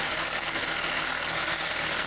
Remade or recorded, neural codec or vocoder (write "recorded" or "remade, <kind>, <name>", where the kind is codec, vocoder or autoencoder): remade, codec, SNAC